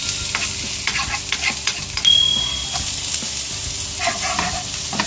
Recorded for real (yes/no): yes